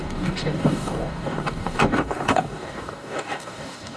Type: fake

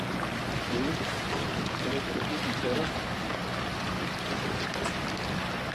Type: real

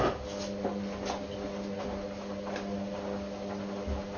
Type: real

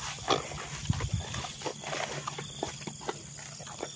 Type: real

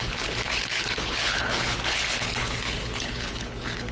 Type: fake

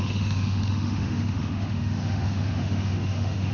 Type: fake